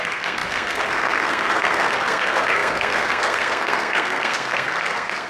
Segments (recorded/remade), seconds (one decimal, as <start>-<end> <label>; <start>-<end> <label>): 0.0-5.3 remade